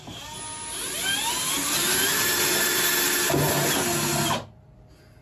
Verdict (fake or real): real